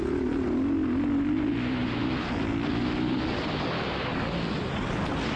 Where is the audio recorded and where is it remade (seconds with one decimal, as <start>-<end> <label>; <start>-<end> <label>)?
0.0-5.4 recorded